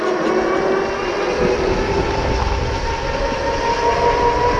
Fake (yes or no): no